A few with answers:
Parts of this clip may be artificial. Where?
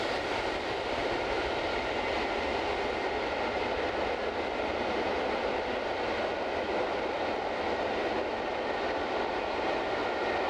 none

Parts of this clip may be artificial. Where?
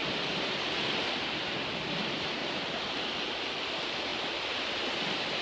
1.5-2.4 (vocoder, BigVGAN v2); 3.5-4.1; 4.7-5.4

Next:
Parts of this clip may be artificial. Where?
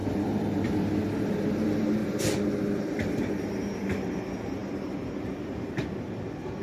0.0-1.0 (vocoder, BigVGAN v2); 2.0-3.3